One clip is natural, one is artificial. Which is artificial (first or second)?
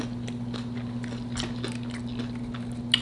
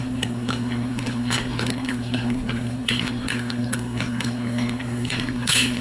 second